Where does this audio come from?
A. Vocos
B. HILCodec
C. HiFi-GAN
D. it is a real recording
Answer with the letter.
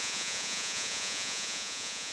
A